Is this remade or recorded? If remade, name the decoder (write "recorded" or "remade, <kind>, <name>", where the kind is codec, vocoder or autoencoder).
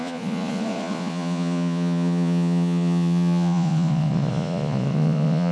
remade, vocoder, Vocos